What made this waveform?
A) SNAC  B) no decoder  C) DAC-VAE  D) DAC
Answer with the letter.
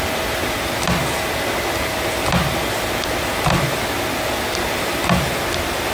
B